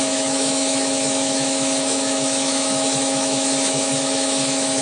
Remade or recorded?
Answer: remade